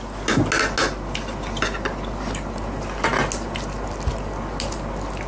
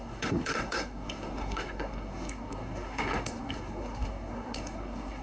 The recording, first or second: first